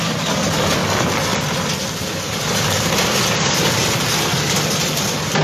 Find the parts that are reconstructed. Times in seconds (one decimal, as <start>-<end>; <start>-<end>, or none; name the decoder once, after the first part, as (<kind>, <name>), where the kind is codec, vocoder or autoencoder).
1.3-4.3 (vocoder, BigVGAN v2)